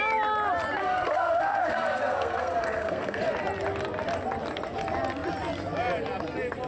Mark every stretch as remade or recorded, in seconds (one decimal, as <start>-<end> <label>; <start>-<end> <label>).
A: 0.0-0.8 recorded; 0.8-3.2 remade; 3.2-6.7 recorded